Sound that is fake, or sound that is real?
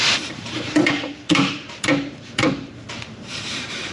fake